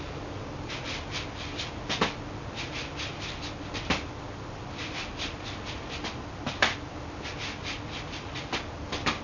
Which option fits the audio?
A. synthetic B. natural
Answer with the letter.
B